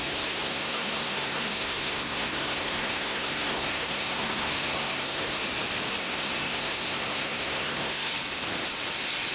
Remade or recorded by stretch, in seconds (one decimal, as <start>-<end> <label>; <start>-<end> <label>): 0.0-5.4 remade; 5.4-6.0 recorded; 6.0-8.1 remade; 8.1-9.3 recorded